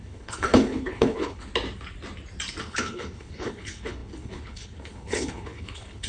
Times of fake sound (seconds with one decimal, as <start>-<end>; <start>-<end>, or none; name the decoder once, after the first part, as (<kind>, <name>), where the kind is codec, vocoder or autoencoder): 0.0-1.5 (codec, HILCodec); 2.6-6.1